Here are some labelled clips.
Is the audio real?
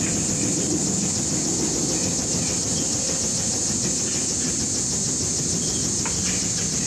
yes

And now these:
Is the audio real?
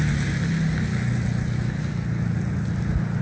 yes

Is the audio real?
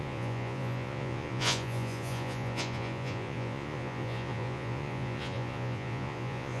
no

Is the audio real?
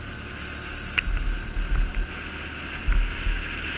yes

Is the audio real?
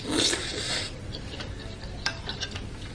yes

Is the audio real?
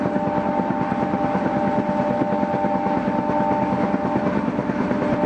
yes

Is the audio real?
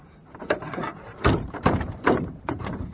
no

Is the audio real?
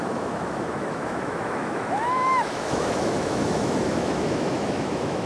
no